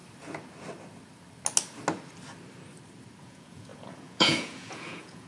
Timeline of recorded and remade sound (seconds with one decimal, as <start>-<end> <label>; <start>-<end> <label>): 0.0-3.2 recorded; 3.2-5.3 remade